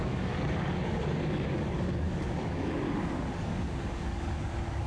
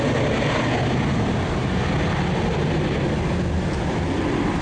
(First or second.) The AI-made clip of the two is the first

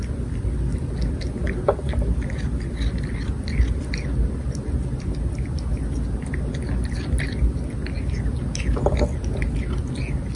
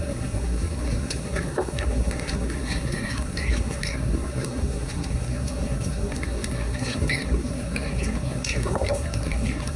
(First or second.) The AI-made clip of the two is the second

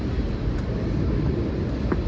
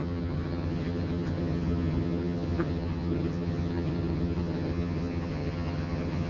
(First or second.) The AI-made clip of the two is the second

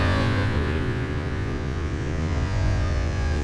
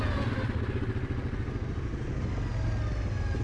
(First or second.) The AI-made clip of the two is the first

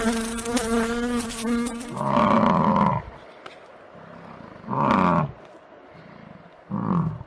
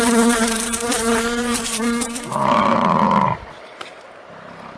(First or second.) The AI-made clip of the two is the second